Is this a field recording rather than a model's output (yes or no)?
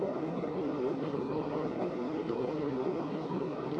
no